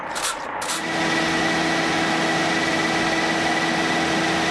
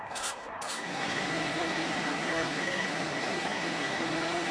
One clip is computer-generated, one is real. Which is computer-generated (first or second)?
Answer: second